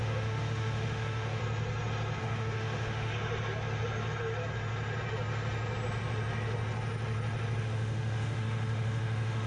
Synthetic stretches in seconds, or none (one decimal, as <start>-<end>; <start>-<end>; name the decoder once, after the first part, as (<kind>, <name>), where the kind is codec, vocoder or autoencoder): 0.0-1.4 (autoencoder, DAC-VAE); 2.2-3.1; 7.6-9.5